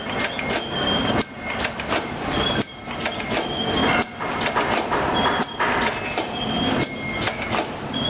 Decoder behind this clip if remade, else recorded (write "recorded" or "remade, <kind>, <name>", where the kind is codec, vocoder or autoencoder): recorded